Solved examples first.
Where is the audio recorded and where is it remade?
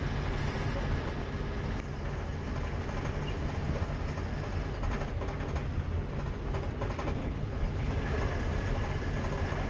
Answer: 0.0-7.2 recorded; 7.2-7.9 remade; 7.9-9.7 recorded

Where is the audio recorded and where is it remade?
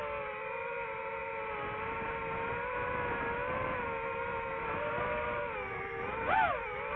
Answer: 0.0-7.0 recorded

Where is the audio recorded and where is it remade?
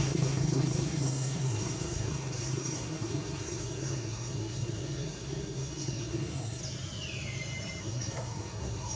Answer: 0.0-6.6 remade; 6.6-7.8 recorded; 7.8-9.0 remade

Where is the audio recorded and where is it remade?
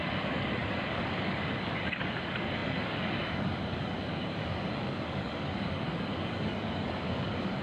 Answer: 0.0-7.6 remade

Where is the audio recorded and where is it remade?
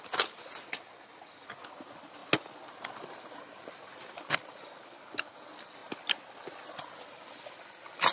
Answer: 0.0-8.1 recorded